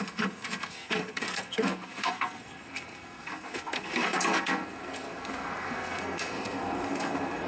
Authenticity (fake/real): fake